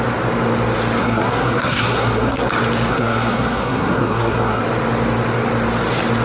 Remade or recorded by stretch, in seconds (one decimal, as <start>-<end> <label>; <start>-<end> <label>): 0.0-1.0 recorded; 1.0-2.5 remade; 2.5-2.9 recorded; 2.9-4.6 remade; 4.6-6.2 recorded